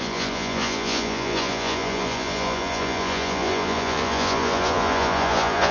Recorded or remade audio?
remade